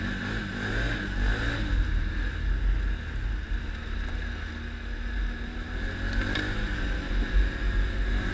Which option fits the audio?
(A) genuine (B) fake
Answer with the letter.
A